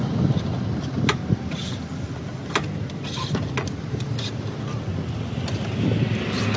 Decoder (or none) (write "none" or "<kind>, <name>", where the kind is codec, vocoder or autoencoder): none